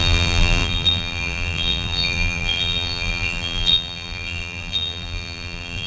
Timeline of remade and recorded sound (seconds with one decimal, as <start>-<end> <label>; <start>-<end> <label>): 0.0-5.9 remade